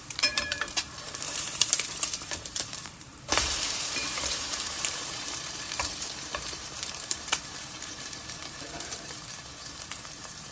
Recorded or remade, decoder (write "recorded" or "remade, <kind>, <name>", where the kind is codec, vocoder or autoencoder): remade, vocoder, BigVGAN v2